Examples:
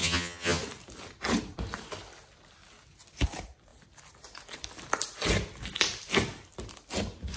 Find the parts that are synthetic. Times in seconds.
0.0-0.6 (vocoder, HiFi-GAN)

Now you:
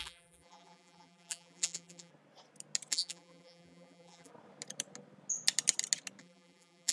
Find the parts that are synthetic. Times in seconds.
0.0-2.1 (vocoder, BigVGAN v2); 2.9-4.3; 6.2-6.9

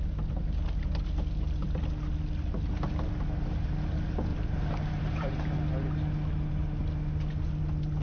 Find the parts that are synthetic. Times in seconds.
4.3-5.3 (vocoder, BigVGAN v2)

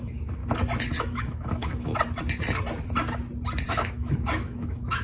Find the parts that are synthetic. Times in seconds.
0.0-0.4 (autoencoder, DAC-VAE); 1.0-1.9; 3.7-5.0